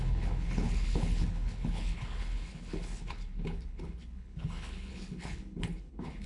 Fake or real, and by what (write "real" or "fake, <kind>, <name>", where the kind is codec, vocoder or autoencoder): fake, codec, HILCodec